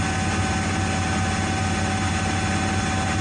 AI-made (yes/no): no